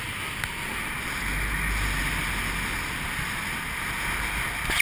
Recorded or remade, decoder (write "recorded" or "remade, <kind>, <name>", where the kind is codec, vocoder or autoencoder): recorded